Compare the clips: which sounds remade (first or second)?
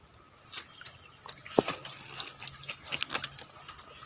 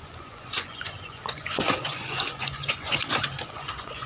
second